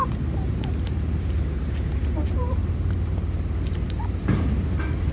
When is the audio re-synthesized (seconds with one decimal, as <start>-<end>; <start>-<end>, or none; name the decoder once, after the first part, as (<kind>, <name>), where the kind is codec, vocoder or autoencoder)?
0.0-5.1 (vocoder, BigVGAN v2)